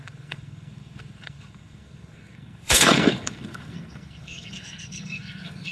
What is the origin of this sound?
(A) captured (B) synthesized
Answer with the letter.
B